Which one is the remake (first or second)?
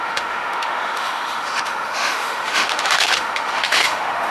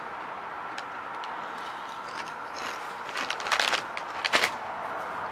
first